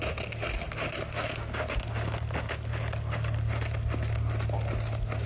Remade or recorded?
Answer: recorded